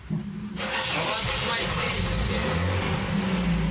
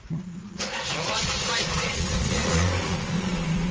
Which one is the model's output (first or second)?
second